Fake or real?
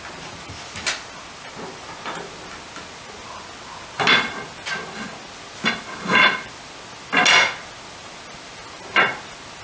real